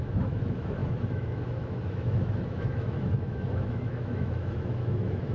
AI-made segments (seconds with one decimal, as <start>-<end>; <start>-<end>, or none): 0.0-5.3